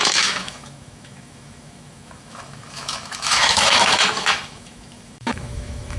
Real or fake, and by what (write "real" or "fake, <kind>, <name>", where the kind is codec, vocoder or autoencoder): fake, autoencoder, DAC-VAE